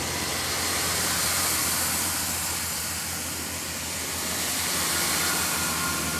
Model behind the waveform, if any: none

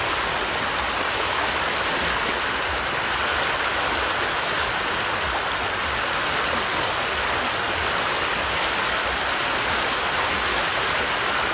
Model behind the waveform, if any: none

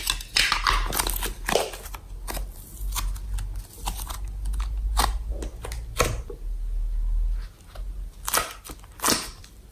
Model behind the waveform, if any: none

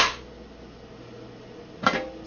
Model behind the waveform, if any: none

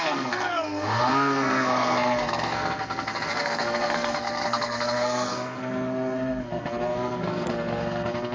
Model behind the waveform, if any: codec, SNAC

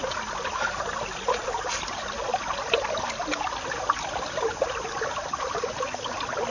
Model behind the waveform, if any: none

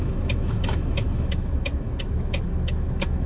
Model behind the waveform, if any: autoencoder, DAC-VAE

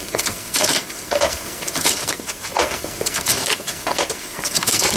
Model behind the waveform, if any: codec, SNAC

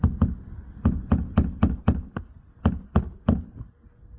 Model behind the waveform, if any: none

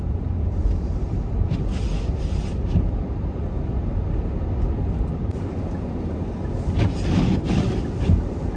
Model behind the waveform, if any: none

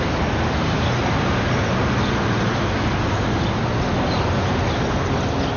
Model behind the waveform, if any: none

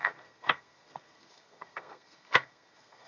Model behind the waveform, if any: codec, SNAC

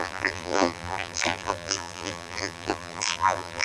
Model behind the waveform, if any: vocoder, BigVGAN v2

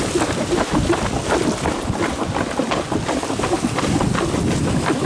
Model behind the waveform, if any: none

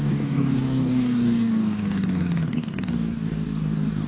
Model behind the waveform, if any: codec, DAC